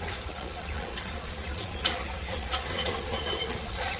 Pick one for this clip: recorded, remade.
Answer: remade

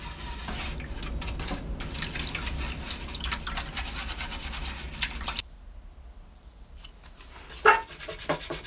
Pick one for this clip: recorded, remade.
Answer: recorded